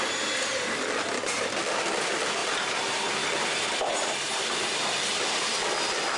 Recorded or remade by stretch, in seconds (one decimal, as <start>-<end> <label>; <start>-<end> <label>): 0.0-6.2 recorded